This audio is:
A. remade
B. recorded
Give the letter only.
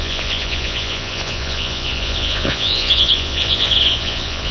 A